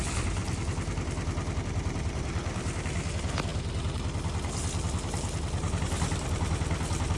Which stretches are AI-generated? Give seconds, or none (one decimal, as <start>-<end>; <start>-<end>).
0.0-0.4; 1.6-3.5; 5.8-7.2